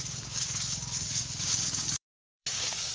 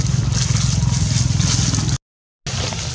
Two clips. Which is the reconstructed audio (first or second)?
first